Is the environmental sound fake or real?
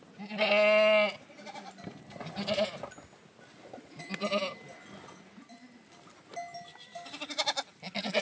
real